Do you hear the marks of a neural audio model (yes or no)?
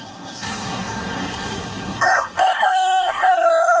yes